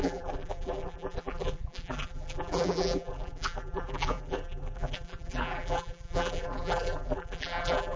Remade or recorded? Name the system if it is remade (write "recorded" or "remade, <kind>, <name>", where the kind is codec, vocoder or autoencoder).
remade, vocoder, BigVGAN v2